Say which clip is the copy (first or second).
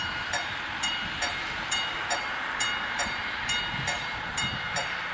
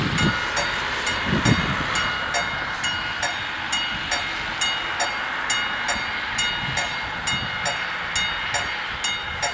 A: first